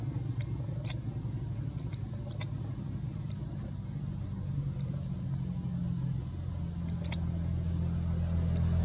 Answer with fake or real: real